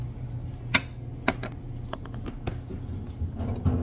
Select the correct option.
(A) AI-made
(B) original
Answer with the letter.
B